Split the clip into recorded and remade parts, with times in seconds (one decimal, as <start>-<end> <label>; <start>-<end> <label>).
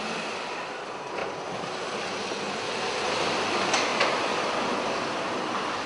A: 0.0-5.9 recorded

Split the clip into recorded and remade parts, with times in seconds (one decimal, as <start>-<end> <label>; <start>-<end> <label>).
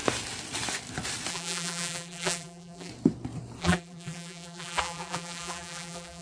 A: 0.0-1.3 recorded; 1.3-2.9 remade; 2.9-3.6 recorded; 3.6-6.2 remade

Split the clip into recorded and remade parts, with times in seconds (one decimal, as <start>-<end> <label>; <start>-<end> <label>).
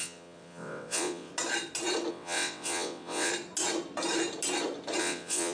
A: 0.0-1.3 remade; 1.3-2.1 recorded; 2.1-3.3 remade; 3.3-5.0 recorded; 5.0-5.5 remade